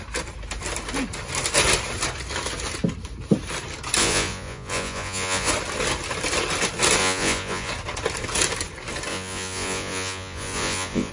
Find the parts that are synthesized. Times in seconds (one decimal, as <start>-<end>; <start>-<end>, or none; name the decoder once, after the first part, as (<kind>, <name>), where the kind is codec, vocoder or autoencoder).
4.0-5.5 (vocoder, Vocos); 7.0-7.7; 9.1-11.1